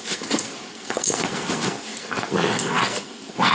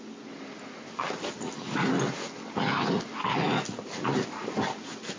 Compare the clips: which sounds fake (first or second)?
first